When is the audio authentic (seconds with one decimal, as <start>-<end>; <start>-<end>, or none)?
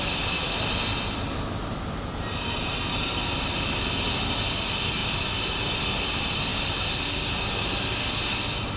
0.0-8.8